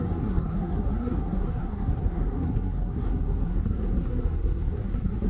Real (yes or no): no